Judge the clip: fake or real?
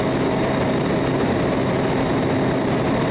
real